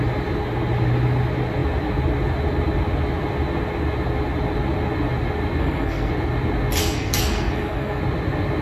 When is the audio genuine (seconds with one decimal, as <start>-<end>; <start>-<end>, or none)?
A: 0.0-5.6; 6.1-6.8; 8.0-8.6